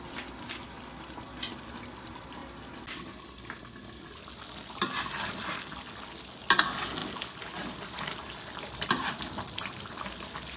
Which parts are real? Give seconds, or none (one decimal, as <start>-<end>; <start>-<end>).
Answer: 0.0-10.6